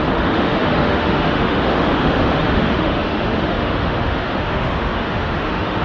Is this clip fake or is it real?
fake